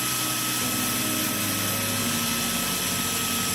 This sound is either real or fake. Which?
real